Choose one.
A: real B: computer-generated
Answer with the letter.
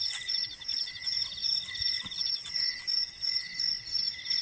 A